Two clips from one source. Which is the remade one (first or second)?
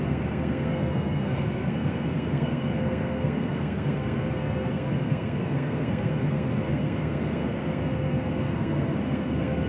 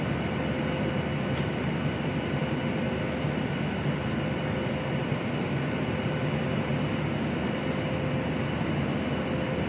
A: first